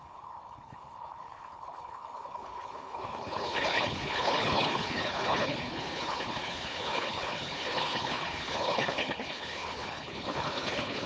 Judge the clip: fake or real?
fake